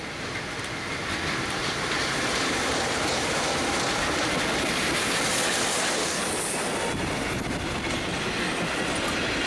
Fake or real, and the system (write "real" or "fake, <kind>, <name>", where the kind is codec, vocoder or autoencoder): real